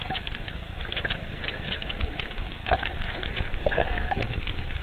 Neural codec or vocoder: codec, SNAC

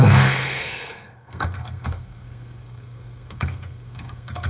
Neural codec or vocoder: codec, SNAC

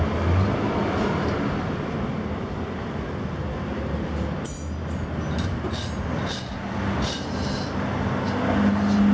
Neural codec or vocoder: none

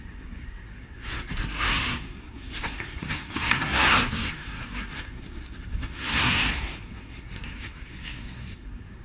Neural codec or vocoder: codec, SNAC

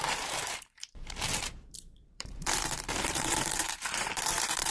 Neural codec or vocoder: vocoder, BigVGAN v2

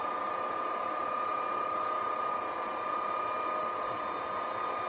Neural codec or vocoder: none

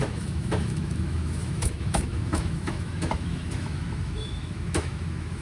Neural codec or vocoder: autoencoder, DAC-VAE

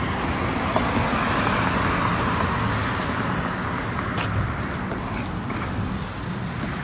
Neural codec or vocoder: none